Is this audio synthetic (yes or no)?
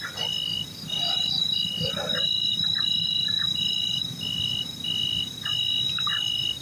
no